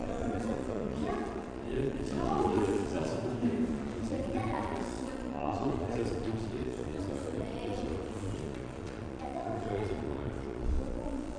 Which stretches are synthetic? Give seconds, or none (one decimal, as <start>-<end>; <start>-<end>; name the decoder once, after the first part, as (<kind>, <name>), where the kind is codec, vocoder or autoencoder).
0.0-3.1 (vocoder, Vocos); 3.7-11.4